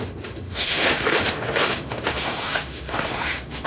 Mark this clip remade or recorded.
remade